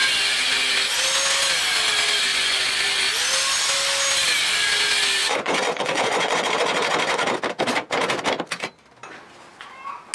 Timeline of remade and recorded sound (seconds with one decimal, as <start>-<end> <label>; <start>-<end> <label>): 0.0-2.3 recorded; 2.3-3.0 remade; 3.0-5.2 recorded; 5.2-6.5 remade; 6.5-10.1 recorded